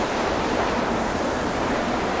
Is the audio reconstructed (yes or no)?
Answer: no